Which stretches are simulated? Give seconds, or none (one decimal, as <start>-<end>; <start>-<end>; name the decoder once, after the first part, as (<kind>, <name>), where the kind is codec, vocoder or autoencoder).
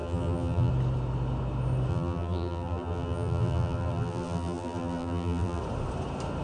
0.0-0.7 (vocoder, BigVGAN v2); 1.9-5.6